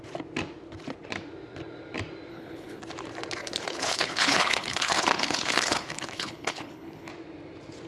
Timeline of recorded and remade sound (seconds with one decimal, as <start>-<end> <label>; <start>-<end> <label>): 0.0-2.3 recorded; 2.3-2.8 remade; 2.8-3.4 recorded; 3.4-7.1 remade; 7.1-7.9 recorded